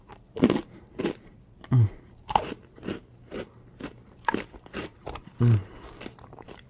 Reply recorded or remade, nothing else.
remade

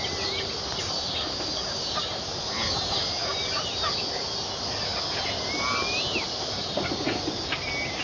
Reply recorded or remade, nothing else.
recorded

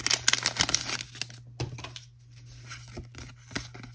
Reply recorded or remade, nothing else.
recorded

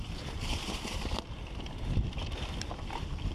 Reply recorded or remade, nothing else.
recorded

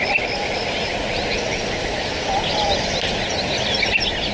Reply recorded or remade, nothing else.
remade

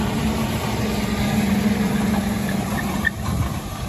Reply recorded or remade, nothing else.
remade